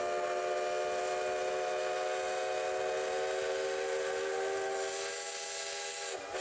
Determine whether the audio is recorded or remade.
recorded